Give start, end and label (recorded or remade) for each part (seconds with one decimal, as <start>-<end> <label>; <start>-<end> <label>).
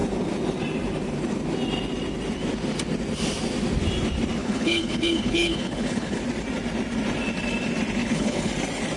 0.0-4.4 recorded; 4.4-6.2 remade; 6.2-8.0 recorded; 8.0-8.5 remade; 8.5-9.0 recorded